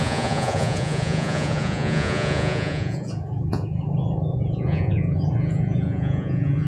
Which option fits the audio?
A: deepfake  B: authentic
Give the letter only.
A